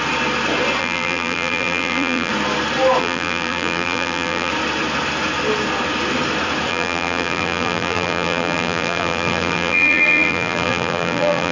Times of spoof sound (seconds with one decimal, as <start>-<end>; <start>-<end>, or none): 0.8-2.3; 3.0-4.5; 6.7-11.5

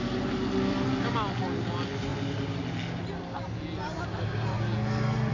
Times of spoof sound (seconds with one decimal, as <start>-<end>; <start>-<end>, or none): none

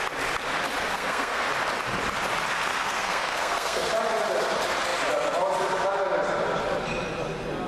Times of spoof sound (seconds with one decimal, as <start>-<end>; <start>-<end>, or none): 0.9-1.5; 2.7-3.9

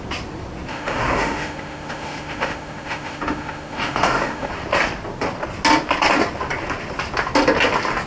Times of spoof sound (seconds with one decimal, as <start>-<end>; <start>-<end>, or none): 0.7-4.5

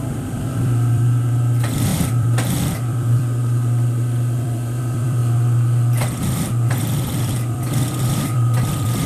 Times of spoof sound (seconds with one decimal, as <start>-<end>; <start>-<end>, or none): 0.0-5.2; 6.7-9.1